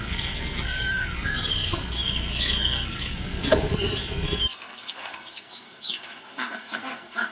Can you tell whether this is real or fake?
fake